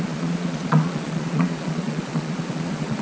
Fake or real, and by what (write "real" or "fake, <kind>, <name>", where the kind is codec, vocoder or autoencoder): fake, vocoder, Vocos